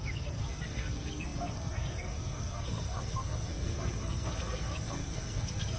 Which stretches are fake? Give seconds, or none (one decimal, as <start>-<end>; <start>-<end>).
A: 0.0-5.8